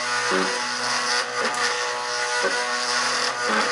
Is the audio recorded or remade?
recorded